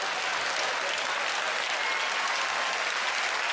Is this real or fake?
real